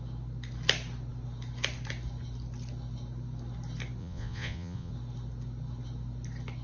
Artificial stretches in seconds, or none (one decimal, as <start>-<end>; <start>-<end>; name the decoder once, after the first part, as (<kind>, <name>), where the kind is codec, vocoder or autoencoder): 4.0-4.9 (vocoder, Vocos)

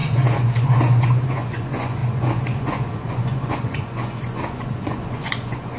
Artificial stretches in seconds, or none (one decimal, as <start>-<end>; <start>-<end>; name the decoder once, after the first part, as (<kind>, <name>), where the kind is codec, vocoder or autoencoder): 0.0-5.8 (vocoder, Vocos)